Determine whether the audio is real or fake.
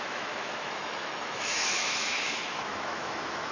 fake